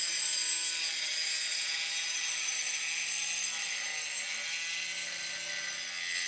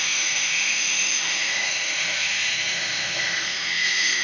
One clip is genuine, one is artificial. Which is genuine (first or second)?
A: first